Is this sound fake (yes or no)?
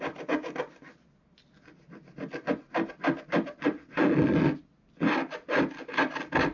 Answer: no